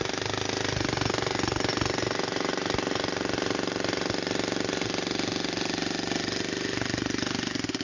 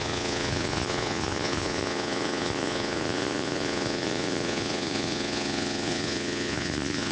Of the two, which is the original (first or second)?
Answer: first